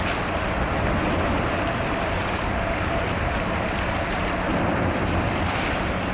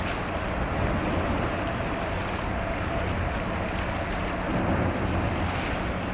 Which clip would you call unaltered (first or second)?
second